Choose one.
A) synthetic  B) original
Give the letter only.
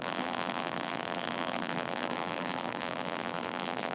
A